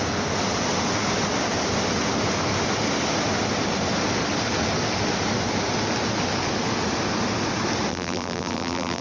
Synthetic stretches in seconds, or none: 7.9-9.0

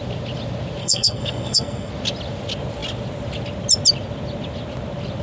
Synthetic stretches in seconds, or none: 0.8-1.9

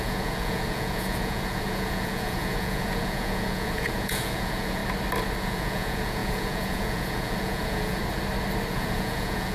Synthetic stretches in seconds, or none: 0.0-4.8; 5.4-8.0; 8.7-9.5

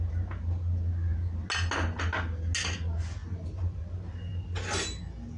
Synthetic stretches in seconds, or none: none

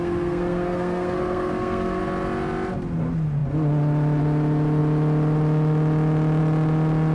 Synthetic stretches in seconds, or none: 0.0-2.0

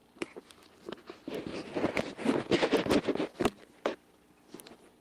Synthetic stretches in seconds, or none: 0.0-0.5